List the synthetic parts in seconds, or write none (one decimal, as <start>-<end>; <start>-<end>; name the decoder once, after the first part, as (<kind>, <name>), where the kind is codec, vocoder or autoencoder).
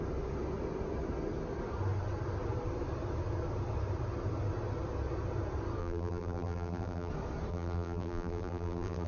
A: 5.8-7.1 (vocoder, BigVGAN v2); 7.5-9.1